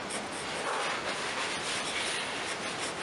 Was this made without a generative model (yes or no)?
yes